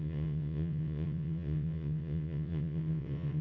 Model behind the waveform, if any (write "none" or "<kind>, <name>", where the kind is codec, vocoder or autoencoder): vocoder, WaveNeXt